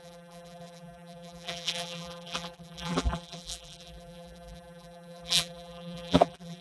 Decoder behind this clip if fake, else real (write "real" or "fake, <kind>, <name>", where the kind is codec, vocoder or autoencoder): fake, vocoder, BigVGAN v2